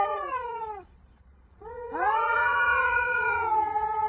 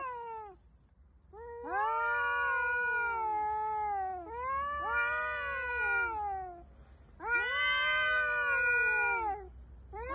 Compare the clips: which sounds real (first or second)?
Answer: second